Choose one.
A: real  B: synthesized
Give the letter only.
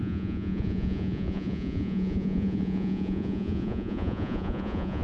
B